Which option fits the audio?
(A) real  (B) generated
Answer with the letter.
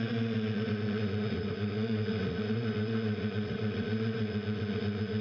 B